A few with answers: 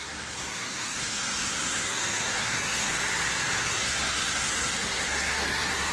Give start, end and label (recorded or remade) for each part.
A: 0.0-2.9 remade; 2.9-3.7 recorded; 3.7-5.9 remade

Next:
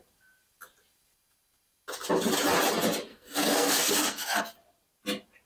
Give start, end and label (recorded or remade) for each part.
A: 0.0-3.1 recorded; 3.1-4.4 remade; 4.4-5.5 recorded

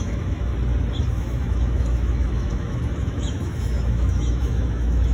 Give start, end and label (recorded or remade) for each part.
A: 0.0-0.5 remade; 0.5-1.1 recorded; 1.1-5.1 remade

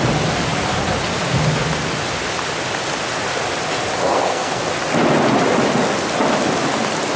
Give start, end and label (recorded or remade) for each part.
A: 0.0-4.0 recorded; 4.0-4.6 remade; 4.6-7.2 recorded

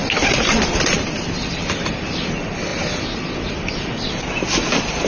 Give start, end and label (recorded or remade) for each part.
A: 0.0-5.1 remade

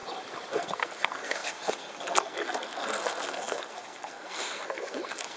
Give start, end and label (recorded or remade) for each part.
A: 0.0-0.5 recorded; 0.5-5.4 remade